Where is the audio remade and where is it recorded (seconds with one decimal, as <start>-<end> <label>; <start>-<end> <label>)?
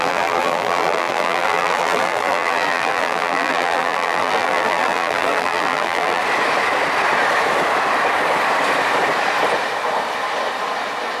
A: 0.0-6.2 remade; 6.2-11.2 recorded